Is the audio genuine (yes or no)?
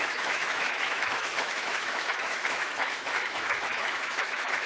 no